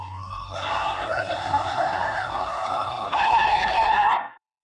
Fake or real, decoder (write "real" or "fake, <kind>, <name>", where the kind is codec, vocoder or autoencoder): fake, codec, SNAC